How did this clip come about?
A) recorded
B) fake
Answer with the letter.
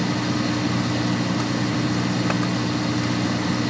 A